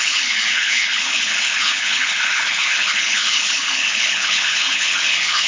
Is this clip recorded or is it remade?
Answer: remade